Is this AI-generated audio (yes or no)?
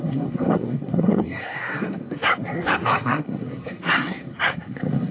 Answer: yes